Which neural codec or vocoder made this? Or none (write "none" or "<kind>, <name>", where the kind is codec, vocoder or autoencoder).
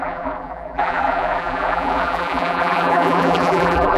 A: vocoder, BigVGAN v2